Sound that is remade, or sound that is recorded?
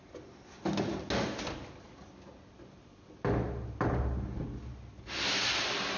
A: recorded